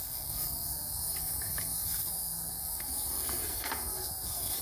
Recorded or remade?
remade